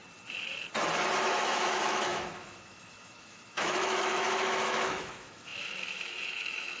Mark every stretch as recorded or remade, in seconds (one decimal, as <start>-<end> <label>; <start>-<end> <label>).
0.0-1.2 recorded; 1.2-6.8 remade